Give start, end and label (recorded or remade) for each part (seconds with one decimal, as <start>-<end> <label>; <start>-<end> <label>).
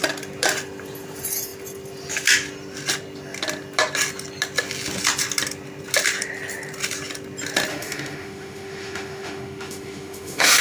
0.0-7.7 recorded; 7.7-10.6 remade